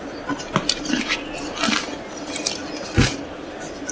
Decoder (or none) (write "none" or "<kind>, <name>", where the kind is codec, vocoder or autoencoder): none